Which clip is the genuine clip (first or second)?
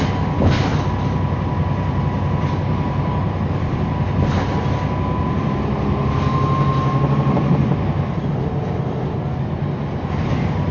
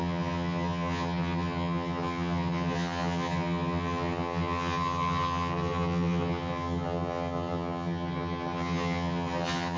first